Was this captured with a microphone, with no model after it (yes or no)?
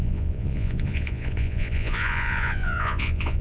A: no